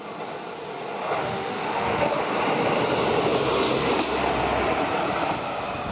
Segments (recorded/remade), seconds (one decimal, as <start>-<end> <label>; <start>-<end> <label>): 0.0-1.2 recorded; 1.2-2.3 remade; 2.3-5.9 recorded